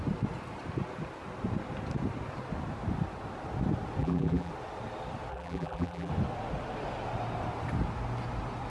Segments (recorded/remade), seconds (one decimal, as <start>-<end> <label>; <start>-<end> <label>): 0.0-4.0 recorded; 4.0-4.5 remade; 4.5-5.3 recorded; 5.3-6.1 remade; 6.1-8.7 recorded